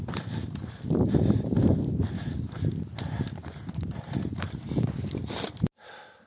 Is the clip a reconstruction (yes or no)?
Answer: no